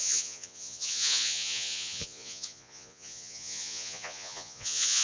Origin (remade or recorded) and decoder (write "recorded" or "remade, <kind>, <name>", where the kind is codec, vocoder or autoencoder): remade, vocoder, Vocos